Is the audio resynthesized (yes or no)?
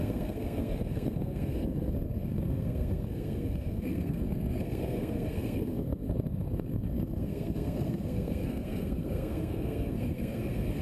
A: yes